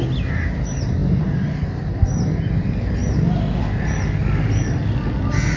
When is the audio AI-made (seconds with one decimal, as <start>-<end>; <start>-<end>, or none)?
none